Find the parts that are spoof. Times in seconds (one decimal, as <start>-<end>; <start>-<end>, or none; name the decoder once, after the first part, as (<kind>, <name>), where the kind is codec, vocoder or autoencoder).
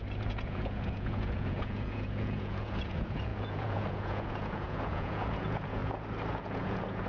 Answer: 0.0-5.8 (vocoder, Vocos); 6.3-7.1